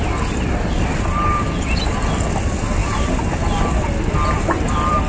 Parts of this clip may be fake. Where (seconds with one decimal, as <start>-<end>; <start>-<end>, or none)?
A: none